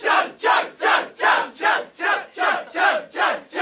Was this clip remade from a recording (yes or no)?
no